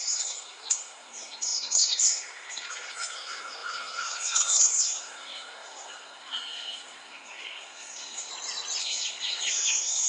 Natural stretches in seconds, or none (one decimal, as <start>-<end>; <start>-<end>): 8.3-8.8